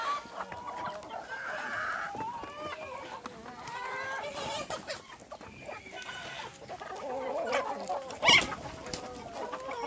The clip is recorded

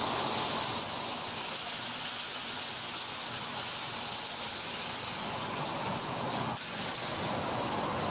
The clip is remade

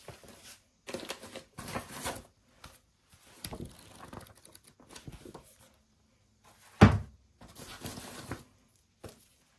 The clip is recorded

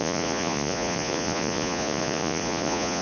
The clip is remade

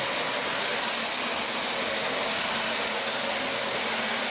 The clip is recorded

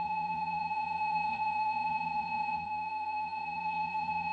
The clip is remade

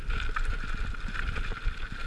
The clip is recorded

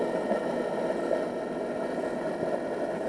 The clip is recorded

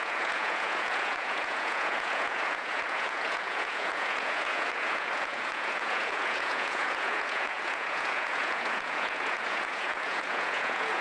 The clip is remade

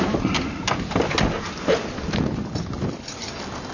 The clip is recorded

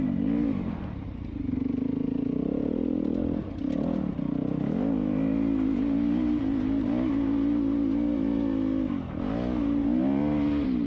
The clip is recorded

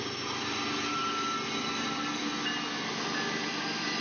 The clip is recorded